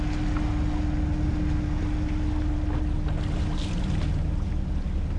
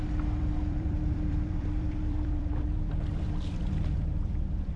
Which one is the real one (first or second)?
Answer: first